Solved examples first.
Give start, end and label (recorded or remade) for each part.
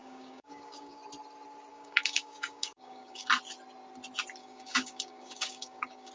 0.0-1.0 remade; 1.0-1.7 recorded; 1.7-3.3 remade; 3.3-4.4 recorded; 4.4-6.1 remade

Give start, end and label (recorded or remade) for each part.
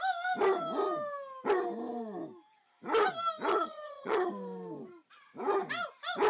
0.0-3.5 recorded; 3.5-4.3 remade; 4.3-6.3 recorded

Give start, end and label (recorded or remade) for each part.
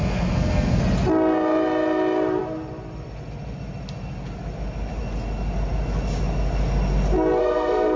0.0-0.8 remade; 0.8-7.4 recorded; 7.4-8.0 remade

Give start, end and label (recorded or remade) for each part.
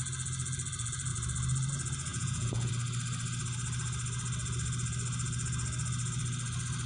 0.0-2.1 recorded; 2.1-2.7 remade; 2.7-6.9 recorded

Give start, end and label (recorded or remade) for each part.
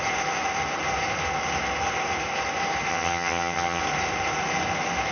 0.0-2.9 recorded; 2.9-3.8 remade; 3.8-5.1 recorded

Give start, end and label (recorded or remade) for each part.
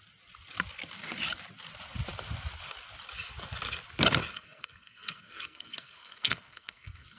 0.0-4.3 recorded; 4.3-7.2 remade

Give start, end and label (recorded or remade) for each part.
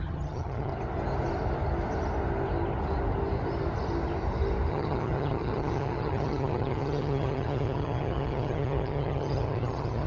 0.0-0.7 remade; 0.7-4.7 recorded; 4.7-10.1 remade